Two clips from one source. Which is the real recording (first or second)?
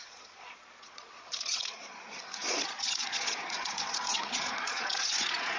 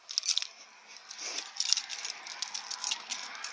second